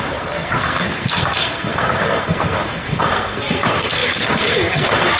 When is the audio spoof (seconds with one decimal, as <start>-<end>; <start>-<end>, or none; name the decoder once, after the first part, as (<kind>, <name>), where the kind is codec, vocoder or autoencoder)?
0.0-5.2 (codec, SNAC)

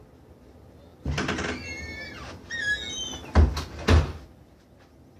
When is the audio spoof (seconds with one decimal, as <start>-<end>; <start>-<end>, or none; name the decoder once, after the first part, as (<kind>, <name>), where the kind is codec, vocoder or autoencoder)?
none

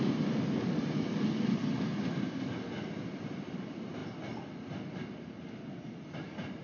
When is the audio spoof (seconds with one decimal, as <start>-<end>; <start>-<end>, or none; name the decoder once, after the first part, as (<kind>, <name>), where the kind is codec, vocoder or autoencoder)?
none

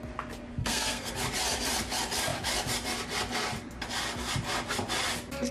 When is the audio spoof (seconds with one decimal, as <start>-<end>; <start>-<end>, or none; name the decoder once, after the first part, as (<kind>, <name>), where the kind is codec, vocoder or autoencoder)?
0.5-1.1 (codec, SNAC)

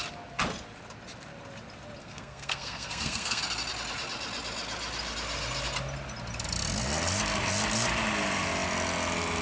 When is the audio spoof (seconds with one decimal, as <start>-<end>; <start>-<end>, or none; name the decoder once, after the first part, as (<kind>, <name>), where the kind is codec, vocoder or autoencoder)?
2.0-3.4 (codec, SNAC)

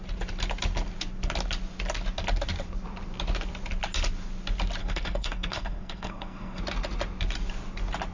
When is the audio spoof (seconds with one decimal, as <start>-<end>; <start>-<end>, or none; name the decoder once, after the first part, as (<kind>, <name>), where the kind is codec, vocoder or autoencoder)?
4.8-6.6 (codec, SNAC)